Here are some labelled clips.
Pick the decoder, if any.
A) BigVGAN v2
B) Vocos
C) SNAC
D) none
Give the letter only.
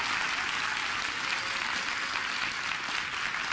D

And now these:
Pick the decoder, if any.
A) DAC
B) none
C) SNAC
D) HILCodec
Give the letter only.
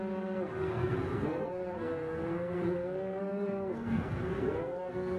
C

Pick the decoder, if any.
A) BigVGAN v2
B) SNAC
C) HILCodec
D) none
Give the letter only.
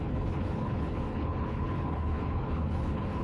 C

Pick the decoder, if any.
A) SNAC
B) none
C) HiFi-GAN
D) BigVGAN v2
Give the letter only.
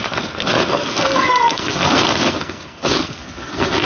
A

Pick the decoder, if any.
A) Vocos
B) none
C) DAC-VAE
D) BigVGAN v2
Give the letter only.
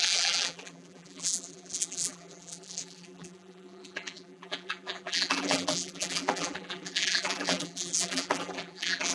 D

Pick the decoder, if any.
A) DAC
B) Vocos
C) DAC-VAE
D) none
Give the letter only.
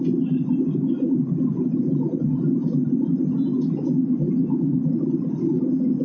D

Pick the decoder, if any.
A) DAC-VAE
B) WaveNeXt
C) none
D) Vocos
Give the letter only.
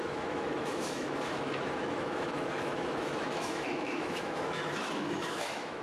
A